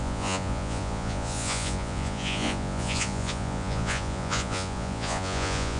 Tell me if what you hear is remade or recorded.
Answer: remade